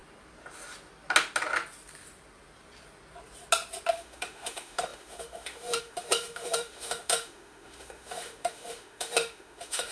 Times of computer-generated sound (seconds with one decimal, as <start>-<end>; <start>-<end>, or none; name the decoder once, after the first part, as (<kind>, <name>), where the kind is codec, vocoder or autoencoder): 3.9-9.9 (autoencoder, DAC-VAE)